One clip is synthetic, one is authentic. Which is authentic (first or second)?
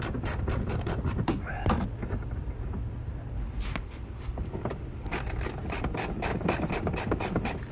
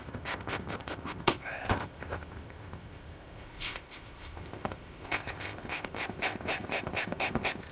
first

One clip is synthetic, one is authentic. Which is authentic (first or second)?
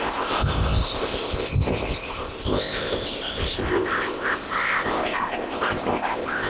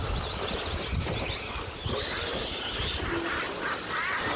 second